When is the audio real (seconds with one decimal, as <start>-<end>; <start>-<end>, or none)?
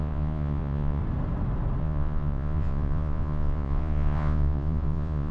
1.0-1.8